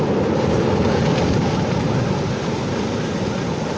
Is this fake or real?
real